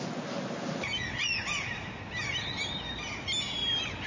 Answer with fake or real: real